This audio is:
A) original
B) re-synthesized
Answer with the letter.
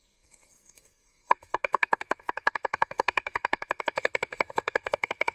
B